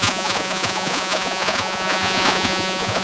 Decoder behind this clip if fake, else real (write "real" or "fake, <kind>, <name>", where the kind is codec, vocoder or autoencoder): fake, vocoder, Vocos